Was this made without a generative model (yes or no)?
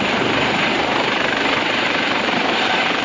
no